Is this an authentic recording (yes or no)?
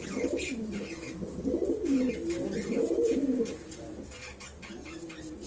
no